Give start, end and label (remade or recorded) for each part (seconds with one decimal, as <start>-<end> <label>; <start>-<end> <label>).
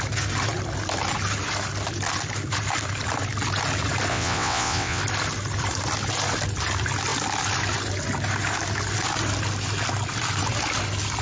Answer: 0.0-4.1 recorded; 4.1-5.0 remade; 5.0-11.2 recorded